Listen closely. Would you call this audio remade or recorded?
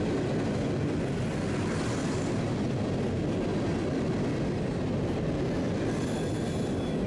recorded